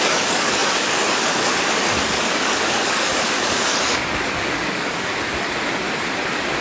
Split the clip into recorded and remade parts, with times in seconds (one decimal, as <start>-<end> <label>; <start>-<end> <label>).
0.0-5.1 remade; 5.1-6.6 recorded

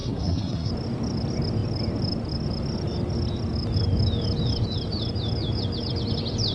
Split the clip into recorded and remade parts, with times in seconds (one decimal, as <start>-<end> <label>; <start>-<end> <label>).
0.0-0.7 remade; 0.7-6.5 recorded

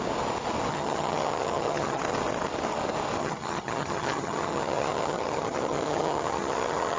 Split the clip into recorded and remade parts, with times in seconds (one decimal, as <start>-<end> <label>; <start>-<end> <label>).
0.0-0.7 recorded; 0.7-2.0 remade; 2.0-3.2 recorded; 3.2-7.0 remade

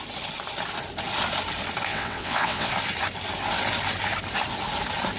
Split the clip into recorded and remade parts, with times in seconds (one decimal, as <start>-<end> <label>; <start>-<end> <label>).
0.0-1.9 recorded; 1.9-2.7 remade; 2.7-5.2 recorded

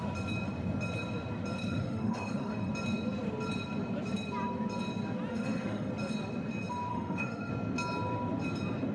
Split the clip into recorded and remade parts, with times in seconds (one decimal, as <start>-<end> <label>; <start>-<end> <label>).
0.0-1.6 recorded; 1.6-2.7 remade; 2.7-5.3 recorded; 5.3-5.9 remade; 5.9-6.9 recorded; 6.9-7.5 remade; 7.5-8.9 recorded

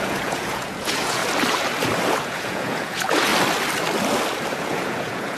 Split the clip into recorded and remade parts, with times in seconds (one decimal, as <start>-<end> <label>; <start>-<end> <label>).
0.0-1.2 remade; 1.2-2.2 recorded; 2.2-3.3 remade; 3.3-4.6 recorded; 4.6-5.4 remade

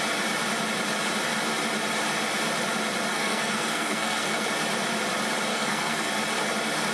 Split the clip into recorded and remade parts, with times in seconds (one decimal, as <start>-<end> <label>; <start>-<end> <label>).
0.0-3.1 recorded; 3.1-4.5 remade; 4.5-5.5 recorded; 5.5-6.1 remade; 6.1-6.9 recorded